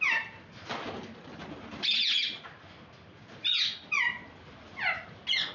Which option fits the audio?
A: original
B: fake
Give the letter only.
A